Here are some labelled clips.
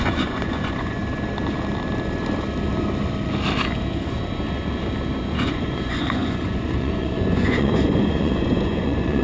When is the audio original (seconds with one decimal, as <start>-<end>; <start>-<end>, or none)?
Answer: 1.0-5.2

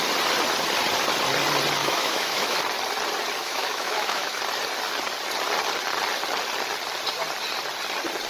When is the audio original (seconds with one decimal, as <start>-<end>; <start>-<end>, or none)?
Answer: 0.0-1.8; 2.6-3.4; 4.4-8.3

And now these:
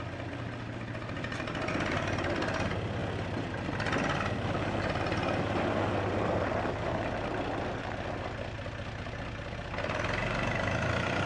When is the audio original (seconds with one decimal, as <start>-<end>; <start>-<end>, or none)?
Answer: 0.0-11.3